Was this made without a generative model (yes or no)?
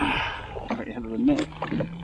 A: yes